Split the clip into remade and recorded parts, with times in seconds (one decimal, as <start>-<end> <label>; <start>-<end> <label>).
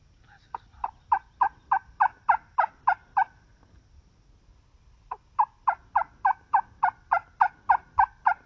0.0-8.5 recorded